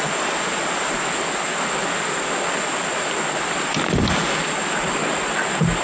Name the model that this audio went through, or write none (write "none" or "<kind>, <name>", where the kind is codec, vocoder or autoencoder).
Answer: none